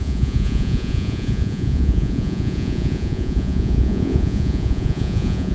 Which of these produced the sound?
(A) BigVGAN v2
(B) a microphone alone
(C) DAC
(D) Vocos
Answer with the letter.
D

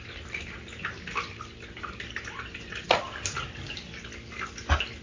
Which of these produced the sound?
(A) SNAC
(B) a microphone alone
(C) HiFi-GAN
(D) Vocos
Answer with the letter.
B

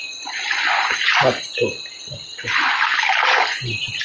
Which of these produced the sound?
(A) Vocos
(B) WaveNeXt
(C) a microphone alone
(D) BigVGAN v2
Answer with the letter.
C